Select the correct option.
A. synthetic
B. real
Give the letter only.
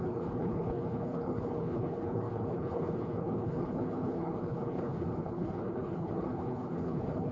A